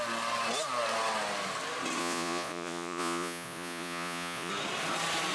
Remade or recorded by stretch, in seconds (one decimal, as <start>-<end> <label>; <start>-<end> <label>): 0.0-2.0 recorded; 2.0-4.5 remade; 4.5-5.3 recorded